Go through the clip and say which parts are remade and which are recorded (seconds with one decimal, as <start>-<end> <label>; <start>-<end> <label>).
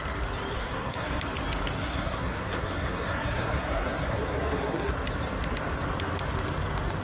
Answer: 0.0-0.5 recorded; 0.5-1.2 remade; 1.2-1.8 recorded; 1.8-4.9 remade; 4.9-7.0 recorded